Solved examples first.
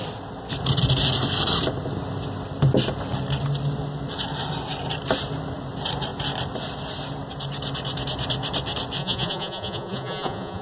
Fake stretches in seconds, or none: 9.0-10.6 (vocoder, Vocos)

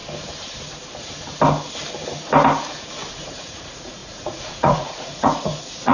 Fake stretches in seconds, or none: 3.1-5.9 (vocoder, Vocos)

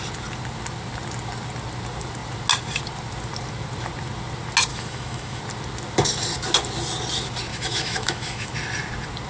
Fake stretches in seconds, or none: 4.7-5.4 (autoencoder, DAC-VAE); 7.5-8.5

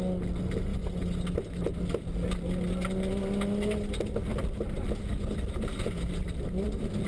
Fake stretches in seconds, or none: 4.3-5.0 (vocoder, BigVGAN v2); 6.2-7.1

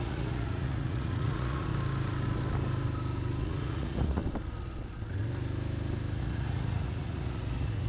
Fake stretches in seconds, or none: 0.0-1.7 (vocoder, Vocos); 3.4-4.2; 6.2-7.9

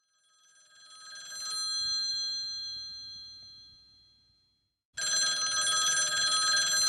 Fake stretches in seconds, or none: none